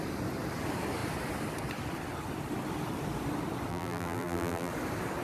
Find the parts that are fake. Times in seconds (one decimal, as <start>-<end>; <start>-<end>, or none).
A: 3.7-4.7